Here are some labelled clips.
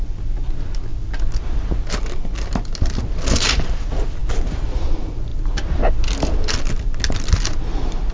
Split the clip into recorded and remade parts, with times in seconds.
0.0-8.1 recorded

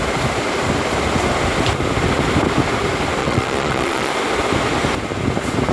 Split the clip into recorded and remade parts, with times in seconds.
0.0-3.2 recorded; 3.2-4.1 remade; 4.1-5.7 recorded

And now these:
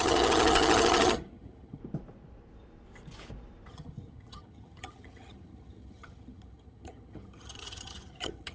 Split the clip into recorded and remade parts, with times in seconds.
0.0-1.8 remade; 1.8-3.7 recorded; 3.7-8.5 remade